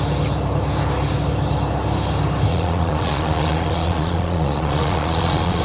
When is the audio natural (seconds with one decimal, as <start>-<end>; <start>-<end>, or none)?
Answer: 0.0-2.5